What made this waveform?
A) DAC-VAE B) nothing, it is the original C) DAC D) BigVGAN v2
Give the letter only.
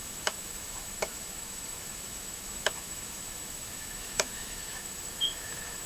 A